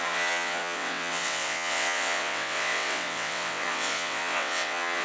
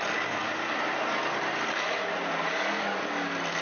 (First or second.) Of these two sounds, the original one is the second